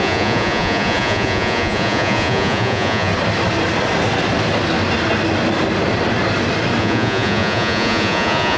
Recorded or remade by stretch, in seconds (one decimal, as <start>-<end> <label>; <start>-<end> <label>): 0.0-3.1 remade; 3.1-6.8 recorded; 6.8-8.6 remade